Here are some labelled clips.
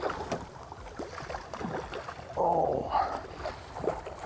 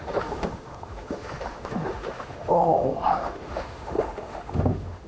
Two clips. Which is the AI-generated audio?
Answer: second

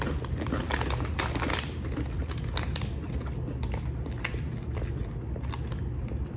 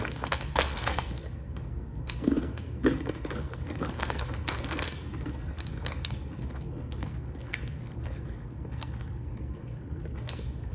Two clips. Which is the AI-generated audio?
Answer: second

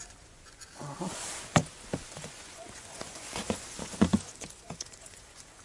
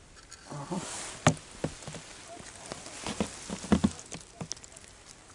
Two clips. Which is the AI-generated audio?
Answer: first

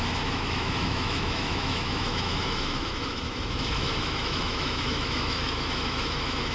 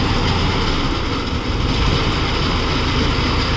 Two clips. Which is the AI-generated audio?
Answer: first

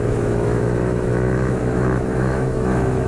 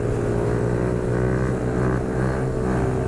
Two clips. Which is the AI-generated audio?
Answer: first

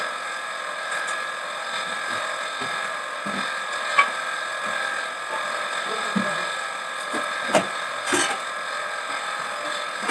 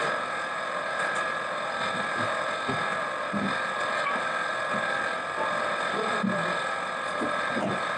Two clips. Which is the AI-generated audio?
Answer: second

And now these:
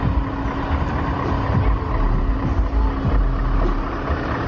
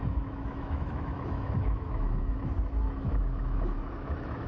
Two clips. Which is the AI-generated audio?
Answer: second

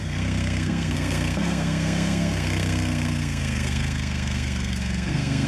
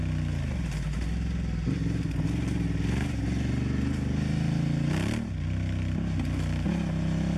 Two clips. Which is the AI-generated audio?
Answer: first